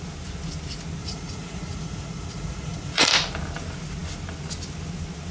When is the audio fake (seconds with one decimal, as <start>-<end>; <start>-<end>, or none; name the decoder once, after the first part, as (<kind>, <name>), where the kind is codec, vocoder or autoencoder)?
1.0-3.1 (vocoder, Vocos)